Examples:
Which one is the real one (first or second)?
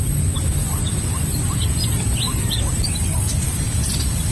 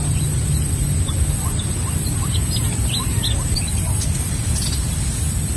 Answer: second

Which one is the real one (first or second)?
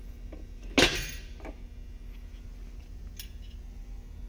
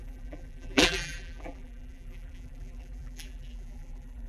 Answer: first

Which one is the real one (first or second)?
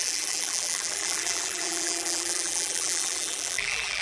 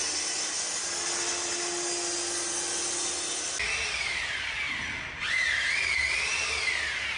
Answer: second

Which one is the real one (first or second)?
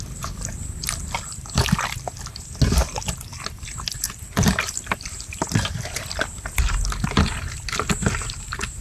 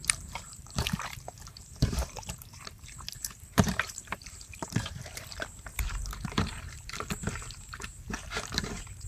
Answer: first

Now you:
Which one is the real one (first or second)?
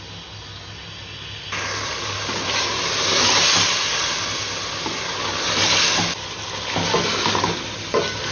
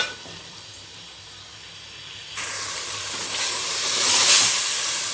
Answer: first